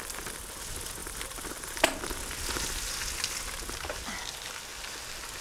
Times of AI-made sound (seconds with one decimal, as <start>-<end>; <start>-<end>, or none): none

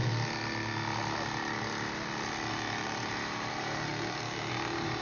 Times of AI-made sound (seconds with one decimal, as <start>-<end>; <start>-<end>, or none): 2.5-3.9; 4.5-5.0

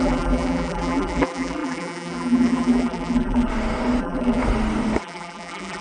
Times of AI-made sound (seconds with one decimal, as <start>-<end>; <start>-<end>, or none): 0.0-3.5; 4.0-4.4; 5.0-5.8

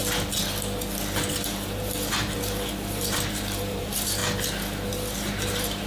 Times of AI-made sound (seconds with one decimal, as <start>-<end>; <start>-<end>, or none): 1.3-4.2; 4.9-5.9